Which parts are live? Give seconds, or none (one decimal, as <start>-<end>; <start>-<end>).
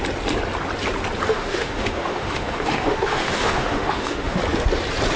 0.0-1.3; 4.4-5.2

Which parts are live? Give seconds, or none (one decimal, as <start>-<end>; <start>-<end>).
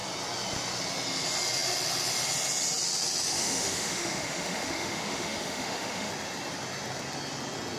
0.0-3.3; 6.1-7.8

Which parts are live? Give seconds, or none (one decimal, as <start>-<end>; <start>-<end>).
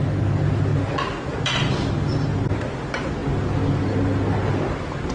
0.0-5.1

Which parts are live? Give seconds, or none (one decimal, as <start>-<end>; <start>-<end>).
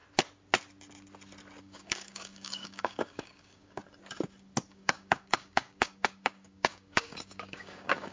0.0-1.6; 3.8-4.7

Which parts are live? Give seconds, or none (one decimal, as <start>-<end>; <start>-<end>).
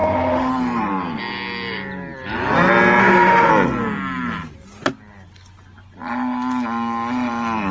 0.5-3.0; 3.5-7.7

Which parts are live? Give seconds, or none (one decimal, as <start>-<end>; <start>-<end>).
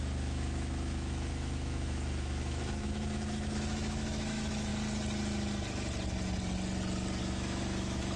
4.7-7.2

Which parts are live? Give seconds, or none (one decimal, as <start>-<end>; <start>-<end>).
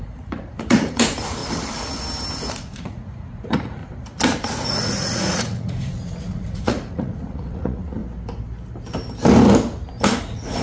1.4-2.5; 3.8-4.7; 8.0-10.2